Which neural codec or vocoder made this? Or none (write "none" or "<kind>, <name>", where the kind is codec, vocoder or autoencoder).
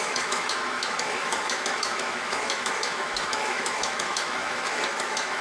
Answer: autoencoder, DAC-VAE